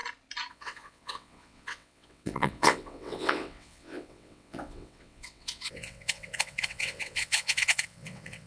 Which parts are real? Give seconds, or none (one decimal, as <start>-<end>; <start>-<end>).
0.0-0.5